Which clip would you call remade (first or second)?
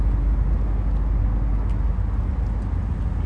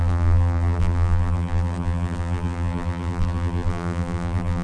second